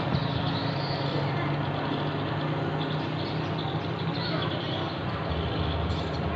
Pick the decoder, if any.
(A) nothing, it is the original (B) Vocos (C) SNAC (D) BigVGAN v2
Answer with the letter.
A